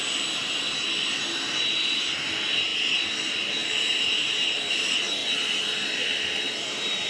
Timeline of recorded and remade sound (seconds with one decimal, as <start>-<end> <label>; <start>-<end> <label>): 0.0-2.7 remade; 2.7-3.2 recorded; 3.2-5.2 remade; 5.2-6.5 recorded; 6.5-7.1 remade